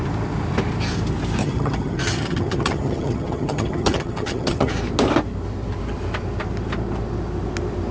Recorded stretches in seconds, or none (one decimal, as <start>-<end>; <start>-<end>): 0.0-1.4; 4.7-7.9